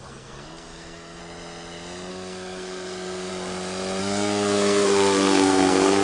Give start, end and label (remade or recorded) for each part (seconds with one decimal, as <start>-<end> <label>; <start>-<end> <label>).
0.0-1.2 remade; 1.2-2.1 recorded; 2.1-3.3 remade; 3.3-4.0 recorded; 4.0-6.0 remade